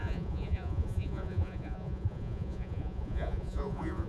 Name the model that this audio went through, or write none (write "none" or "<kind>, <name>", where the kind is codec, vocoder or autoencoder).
vocoder, Vocos